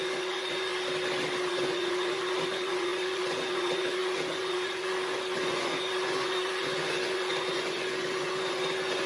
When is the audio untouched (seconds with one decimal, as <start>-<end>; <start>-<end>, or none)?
0.7-1.5